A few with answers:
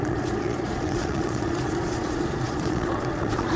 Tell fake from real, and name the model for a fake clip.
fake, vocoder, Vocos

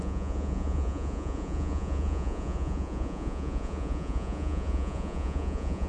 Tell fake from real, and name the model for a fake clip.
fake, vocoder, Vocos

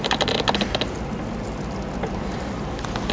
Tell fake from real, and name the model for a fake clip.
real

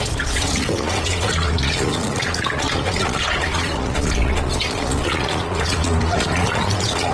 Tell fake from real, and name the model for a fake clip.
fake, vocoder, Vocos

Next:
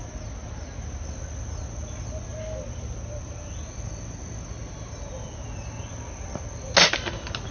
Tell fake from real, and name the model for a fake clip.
real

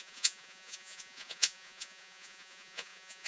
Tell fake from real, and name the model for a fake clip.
fake, vocoder, Vocos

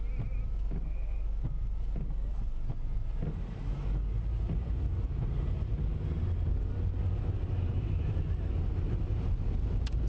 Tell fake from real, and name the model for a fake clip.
real